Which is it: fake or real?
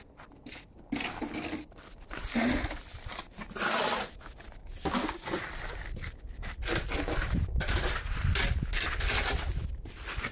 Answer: real